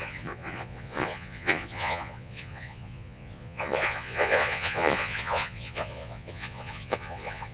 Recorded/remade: remade